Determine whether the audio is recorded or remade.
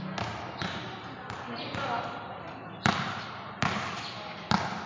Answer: recorded